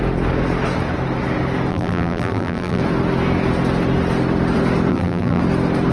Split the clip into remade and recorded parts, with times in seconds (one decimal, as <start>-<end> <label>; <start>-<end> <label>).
0.0-1.7 recorded; 1.7-2.8 remade; 2.8-4.9 recorded; 4.9-5.4 remade; 5.4-5.9 recorded